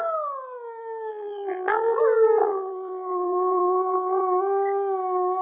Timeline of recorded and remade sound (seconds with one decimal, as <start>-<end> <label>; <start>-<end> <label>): 0.0-1.1 recorded; 1.1-2.0 remade; 2.0-2.4 recorded; 2.4-4.2 remade; 4.2-5.4 recorded